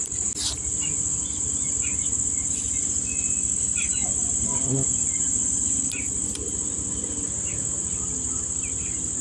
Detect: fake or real real